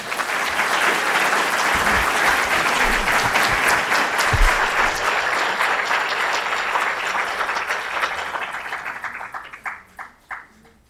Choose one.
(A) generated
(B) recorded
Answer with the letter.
B